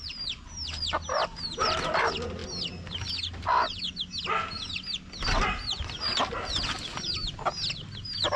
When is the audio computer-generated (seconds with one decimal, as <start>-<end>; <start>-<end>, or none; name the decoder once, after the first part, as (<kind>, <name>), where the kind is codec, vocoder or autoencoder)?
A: 1.3-2.0 (vocoder, BigVGAN v2)